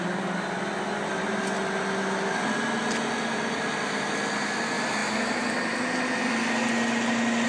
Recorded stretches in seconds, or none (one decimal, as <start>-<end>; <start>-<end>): 0.0-7.5